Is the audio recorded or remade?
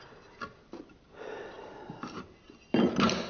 remade